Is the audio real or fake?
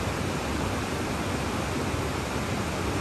real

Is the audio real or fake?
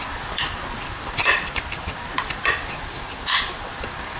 real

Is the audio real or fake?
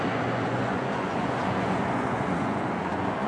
fake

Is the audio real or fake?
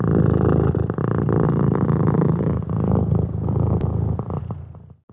real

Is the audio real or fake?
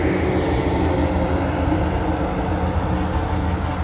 real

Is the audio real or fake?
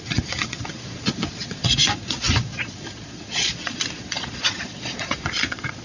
fake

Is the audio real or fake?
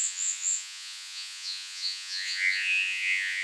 fake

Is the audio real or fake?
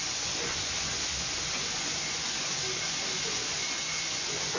fake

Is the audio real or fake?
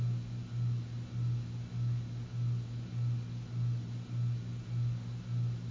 real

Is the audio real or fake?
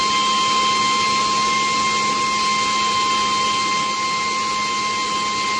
real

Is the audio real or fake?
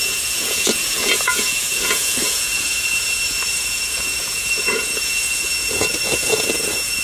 fake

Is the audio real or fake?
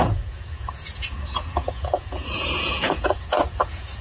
fake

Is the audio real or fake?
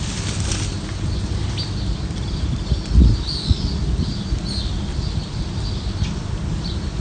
real